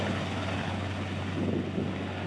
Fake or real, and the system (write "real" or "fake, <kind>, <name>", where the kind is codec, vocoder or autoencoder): real